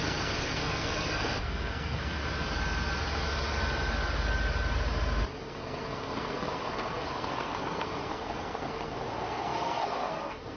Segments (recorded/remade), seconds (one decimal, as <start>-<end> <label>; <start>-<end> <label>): 0.0-2.2 remade; 2.2-5.4 recorded; 5.4-10.6 remade